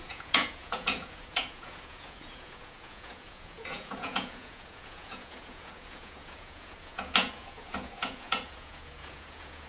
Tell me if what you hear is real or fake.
fake